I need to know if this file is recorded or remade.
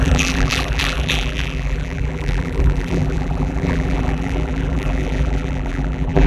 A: remade